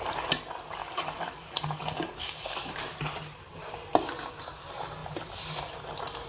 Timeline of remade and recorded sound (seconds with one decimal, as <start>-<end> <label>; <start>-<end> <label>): 0.0-0.8 recorded; 0.8-2.8 remade; 2.8-6.3 recorded